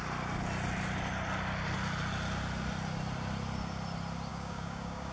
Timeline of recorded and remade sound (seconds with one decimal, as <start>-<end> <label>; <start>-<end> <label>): 0.0-4.3 recorded; 4.3-5.1 remade